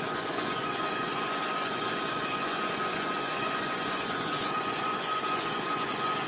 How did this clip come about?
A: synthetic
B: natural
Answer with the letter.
A